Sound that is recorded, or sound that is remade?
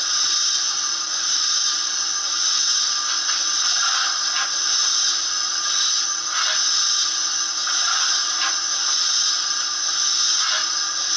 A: recorded